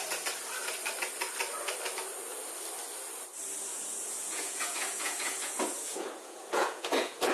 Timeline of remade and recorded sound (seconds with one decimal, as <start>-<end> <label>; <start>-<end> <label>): 0.0-3.7 recorded; 3.7-7.3 remade